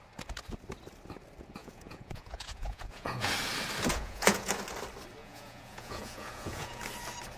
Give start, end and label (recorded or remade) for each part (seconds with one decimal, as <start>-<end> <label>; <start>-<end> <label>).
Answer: 0.0-1.6 recorded; 1.6-3.3 remade; 3.3-3.9 recorded; 3.9-4.5 remade; 4.5-5.2 recorded; 5.2-6.8 remade; 6.8-7.4 recorded